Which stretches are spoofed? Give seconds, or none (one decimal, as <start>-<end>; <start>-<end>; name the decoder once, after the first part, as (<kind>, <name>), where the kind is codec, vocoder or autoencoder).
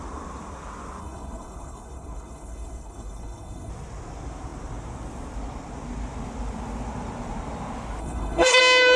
1.0-3.7 (codec, HILCodec); 8.0-8.6